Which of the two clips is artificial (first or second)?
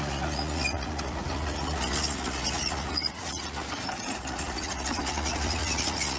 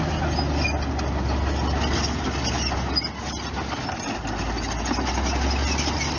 first